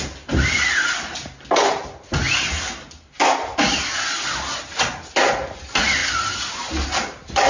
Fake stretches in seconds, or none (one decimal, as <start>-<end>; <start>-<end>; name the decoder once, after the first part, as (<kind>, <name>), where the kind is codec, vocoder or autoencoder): none